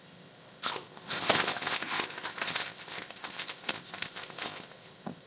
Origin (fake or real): fake